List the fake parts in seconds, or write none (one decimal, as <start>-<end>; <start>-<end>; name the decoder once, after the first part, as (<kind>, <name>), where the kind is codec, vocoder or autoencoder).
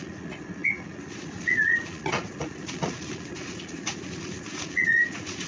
0.0-5.5 (vocoder, Vocos)